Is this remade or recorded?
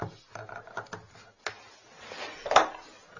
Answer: recorded